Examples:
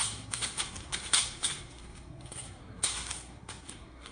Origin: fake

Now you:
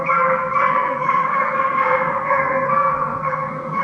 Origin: fake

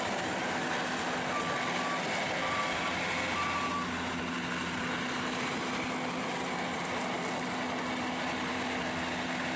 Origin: real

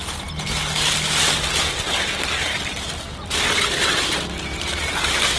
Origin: real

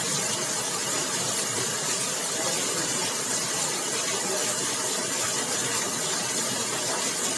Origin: real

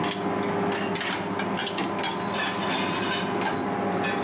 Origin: real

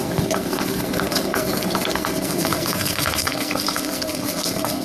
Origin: fake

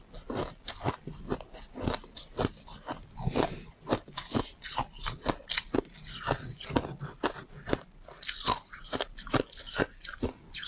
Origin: real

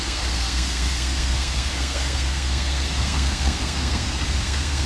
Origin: fake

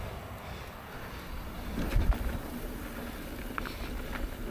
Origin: real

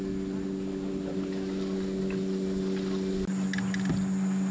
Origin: real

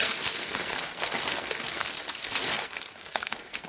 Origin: fake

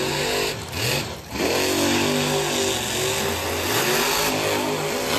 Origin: real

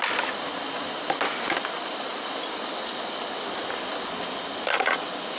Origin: real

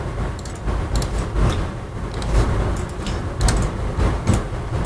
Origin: real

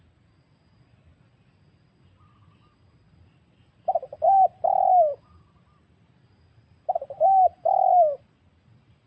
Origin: real